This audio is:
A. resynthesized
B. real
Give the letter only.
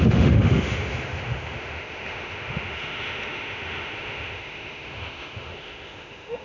A